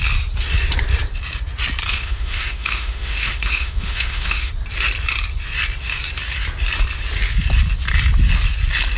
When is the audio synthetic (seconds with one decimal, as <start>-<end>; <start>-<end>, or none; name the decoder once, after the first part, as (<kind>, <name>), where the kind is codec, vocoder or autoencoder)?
1.9-4.5 (autoencoder, DAC-VAE)